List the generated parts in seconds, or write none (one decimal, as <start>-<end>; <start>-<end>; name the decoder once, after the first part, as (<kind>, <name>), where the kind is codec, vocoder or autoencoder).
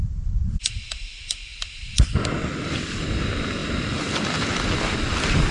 none